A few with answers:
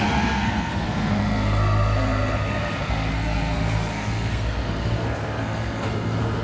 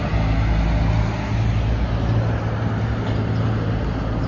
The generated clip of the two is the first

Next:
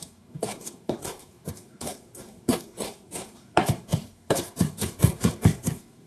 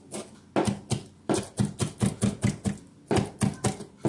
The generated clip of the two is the first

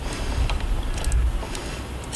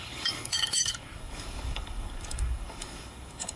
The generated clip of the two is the second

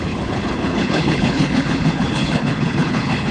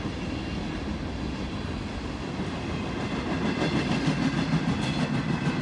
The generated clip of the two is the first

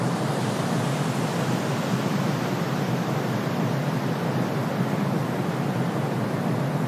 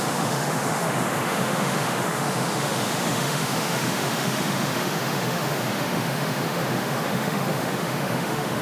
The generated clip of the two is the second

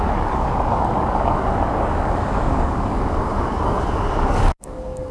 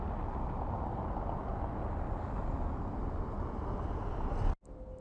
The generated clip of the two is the first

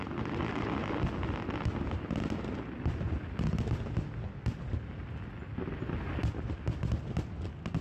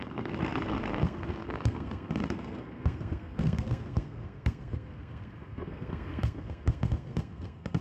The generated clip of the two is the second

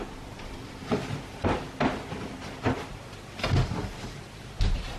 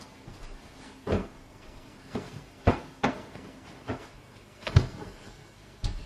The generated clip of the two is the second